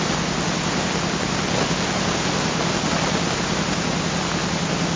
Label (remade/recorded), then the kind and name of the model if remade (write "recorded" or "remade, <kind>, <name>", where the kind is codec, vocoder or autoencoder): recorded